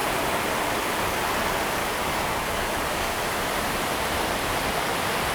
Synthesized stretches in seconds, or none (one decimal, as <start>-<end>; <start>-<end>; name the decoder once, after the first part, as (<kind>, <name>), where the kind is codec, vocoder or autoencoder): 1.8-3.1 (codec, DAC)